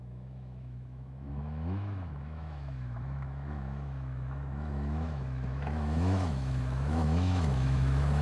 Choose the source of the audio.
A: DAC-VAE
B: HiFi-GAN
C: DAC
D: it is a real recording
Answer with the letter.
A